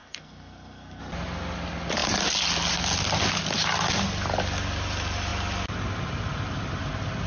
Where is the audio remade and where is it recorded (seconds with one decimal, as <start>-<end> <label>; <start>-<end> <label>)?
0.0-1.0 remade; 1.0-7.3 recorded